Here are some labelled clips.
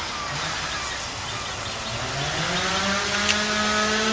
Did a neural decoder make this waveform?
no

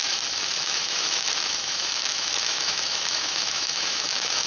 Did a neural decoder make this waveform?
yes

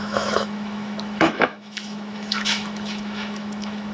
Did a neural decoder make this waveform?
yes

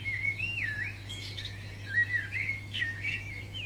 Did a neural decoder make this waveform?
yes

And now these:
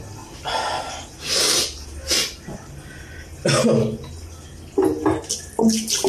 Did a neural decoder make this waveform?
no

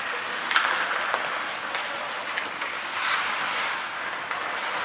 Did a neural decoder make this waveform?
no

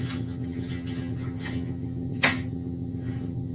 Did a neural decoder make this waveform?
yes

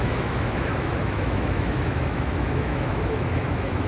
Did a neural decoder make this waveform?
yes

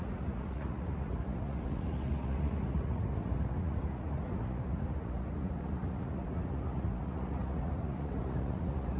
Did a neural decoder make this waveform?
yes